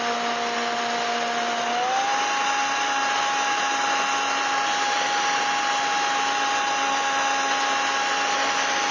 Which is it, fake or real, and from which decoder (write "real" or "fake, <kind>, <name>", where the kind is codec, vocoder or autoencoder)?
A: real